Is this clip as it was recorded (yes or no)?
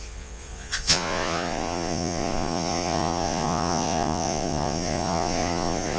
no